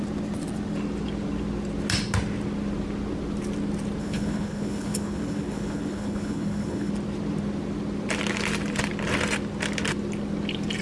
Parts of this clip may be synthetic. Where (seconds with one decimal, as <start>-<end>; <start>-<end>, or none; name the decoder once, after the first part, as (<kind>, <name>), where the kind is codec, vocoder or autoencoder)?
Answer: 4.0-6.9 (codec, HILCodec)